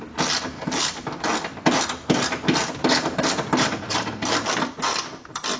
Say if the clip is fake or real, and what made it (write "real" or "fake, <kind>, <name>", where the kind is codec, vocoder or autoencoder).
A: fake, vocoder, BigVGAN v2